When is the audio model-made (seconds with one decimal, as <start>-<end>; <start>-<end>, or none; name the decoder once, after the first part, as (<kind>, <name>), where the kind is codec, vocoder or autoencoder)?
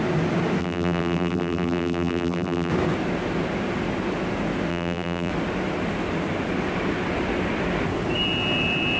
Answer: 0.6-2.7 (vocoder, BigVGAN v2); 4.7-5.3